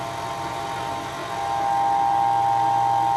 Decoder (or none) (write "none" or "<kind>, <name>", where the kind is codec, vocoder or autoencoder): none